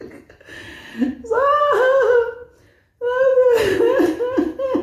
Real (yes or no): yes